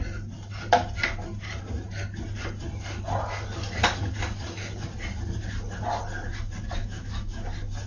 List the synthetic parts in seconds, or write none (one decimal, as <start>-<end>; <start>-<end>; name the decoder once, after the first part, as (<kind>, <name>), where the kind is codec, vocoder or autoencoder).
6.8-7.5 (autoencoder, DAC-VAE)